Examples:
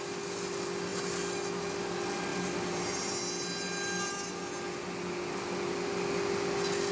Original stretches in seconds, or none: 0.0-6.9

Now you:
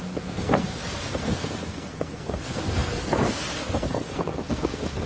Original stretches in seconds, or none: none

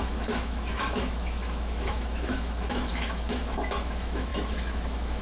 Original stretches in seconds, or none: none

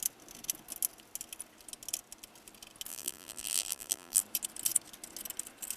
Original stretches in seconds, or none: 0.0-2.9; 4.2-5.8

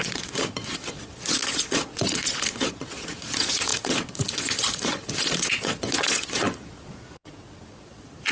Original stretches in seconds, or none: none

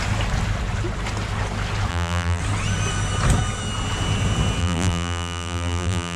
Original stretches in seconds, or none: 0.0-1.9; 2.4-4.6